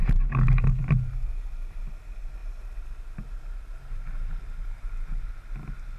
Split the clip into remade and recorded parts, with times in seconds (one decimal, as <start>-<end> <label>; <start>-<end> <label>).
0.0-0.8 remade; 0.8-6.0 recorded